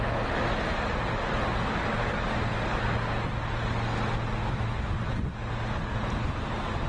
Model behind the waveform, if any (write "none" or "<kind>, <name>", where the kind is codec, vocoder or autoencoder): none